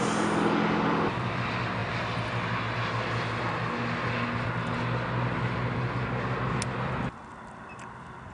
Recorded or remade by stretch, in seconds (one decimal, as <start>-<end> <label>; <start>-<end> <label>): 0.0-8.3 recorded